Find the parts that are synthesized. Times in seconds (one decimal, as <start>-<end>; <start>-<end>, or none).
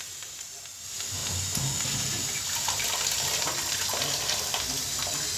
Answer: none